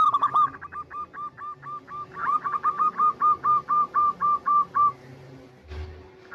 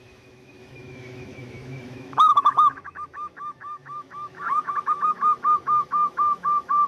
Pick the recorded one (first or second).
first